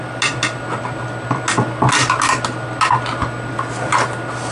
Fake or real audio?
real